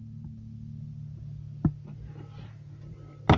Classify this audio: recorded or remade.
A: recorded